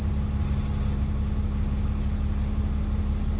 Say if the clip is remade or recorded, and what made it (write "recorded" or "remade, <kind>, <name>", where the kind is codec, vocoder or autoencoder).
recorded